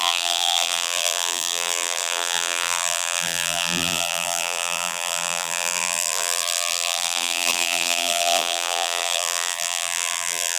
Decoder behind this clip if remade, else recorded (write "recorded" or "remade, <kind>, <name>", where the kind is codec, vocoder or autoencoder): remade, vocoder, BigVGAN v2